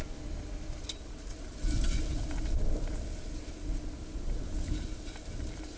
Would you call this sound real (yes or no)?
yes